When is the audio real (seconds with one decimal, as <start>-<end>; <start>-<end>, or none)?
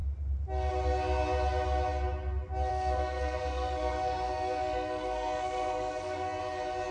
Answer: 0.0-2.7; 6.4-6.9